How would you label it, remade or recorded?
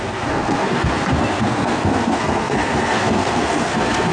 remade